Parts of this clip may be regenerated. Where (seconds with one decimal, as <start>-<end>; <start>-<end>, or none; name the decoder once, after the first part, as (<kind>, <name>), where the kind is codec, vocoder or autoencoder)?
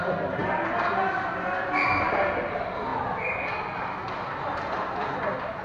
none